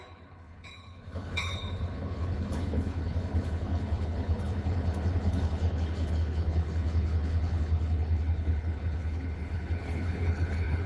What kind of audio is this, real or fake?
fake